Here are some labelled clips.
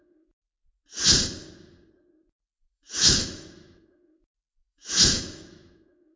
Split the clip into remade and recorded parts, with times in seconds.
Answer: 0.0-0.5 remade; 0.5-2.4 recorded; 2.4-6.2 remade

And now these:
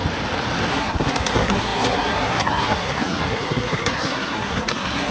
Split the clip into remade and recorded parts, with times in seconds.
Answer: 0.0-0.7 recorded; 0.7-5.1 remade

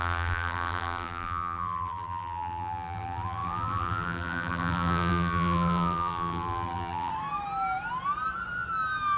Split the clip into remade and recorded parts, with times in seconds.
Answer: 0.0-7.1 remade; 7.1-9.2 recorded

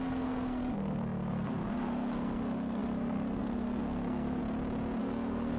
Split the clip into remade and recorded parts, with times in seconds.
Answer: 0.0-4.4 remade; 4.4-5.0 recorded; 5.0-5.6 remade

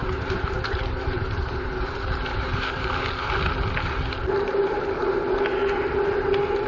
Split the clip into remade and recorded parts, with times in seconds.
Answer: 0.0-2.7 remade; 2.7-4.5 recorded; 4.5-5.0 remade; 5.0-6.7 recorded

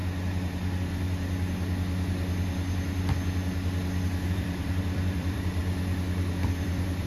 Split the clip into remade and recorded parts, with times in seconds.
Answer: 0.0-4.3 recorded; 4.3-5.6 remade; 5.6-6.5 recorded; 6.5-7.1 remade

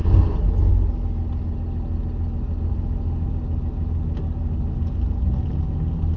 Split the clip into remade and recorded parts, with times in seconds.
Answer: 0.0-6.2 recorded